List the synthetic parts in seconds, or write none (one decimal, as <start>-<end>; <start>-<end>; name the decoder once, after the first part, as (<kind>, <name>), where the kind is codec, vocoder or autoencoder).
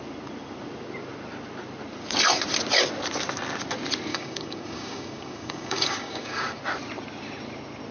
4.1-6.6 (codec, DAC)